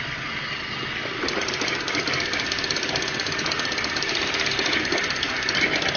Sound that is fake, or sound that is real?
real